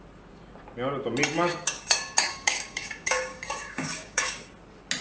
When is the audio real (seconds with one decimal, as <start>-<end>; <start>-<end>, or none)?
0.0-1.5; 4.5-5.0